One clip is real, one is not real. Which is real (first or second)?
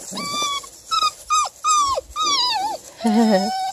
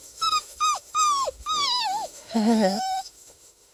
first